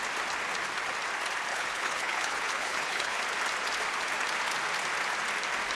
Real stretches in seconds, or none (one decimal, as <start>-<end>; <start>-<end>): 0.0-1.5; 3.2-5.7